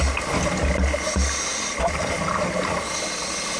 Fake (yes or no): no